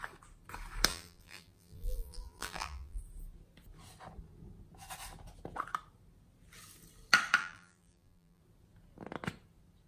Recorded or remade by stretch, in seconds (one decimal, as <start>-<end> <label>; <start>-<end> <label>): 0.0-0.9 recorded; 0.9-3.0 remade; 3.0-7.4 recorded; 7.4-8.4 remade; 8.4-9.9 recorded